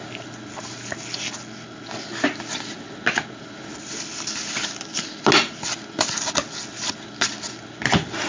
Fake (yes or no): no